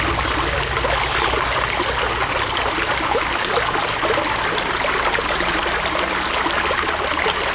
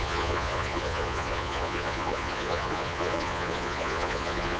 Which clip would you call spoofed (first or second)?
second